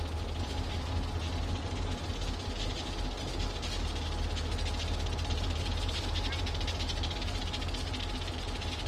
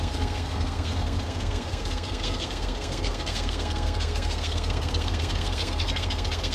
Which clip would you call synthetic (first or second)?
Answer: second